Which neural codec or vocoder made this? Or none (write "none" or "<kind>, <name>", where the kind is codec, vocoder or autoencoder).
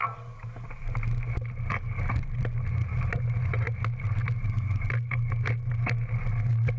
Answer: none